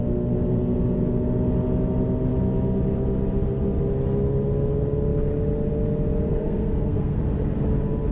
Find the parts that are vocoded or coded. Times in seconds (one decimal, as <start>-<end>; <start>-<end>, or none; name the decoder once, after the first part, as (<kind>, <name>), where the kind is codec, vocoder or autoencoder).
6.3-7.2 (codec, SNAC)